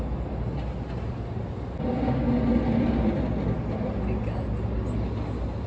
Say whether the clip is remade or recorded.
recorded